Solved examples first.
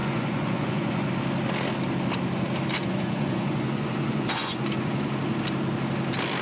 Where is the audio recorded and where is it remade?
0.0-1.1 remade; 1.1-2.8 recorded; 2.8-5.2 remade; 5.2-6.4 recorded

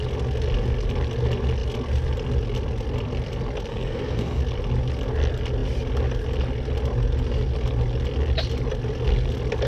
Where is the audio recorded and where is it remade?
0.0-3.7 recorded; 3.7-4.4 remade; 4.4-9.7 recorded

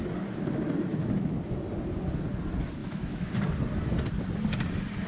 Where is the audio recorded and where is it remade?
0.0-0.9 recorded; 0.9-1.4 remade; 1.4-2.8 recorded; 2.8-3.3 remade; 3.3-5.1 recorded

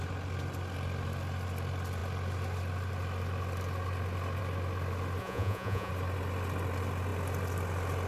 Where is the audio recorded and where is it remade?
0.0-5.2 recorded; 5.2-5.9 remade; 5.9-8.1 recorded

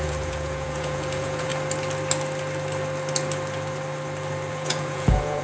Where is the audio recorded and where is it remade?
0.0-1.5 remade; 1.5-4.5 recorded; 4.5-5.4 remade